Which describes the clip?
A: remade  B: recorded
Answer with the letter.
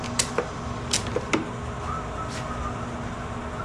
B